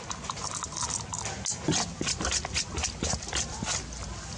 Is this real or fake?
real